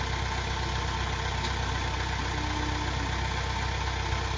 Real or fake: real